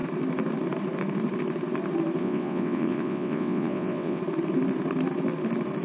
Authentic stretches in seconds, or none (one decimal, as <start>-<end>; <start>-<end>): 0.0-2.2; 4.2-5.8